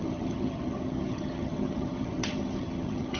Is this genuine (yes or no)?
no